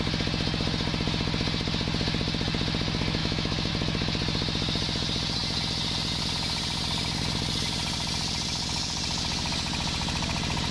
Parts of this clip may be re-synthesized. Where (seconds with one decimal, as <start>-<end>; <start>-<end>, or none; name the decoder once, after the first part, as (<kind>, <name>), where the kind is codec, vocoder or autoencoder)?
3.2-3.7 (autoencoder, DAC-VAE)